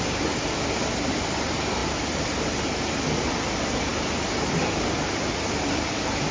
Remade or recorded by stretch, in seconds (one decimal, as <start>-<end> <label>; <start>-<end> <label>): 0.0-6.3 recorded